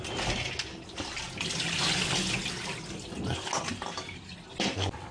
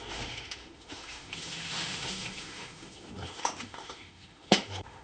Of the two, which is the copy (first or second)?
second